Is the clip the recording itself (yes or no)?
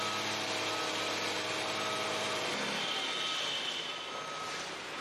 yes